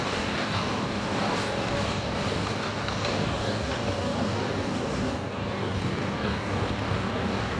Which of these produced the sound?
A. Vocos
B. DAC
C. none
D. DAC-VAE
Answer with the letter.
B